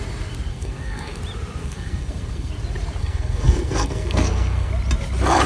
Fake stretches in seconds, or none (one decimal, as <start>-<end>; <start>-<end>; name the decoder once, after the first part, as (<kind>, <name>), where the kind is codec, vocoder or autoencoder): 0.5-1.2 (codec, SNAC); 1.6-2.5; 3.0-4.7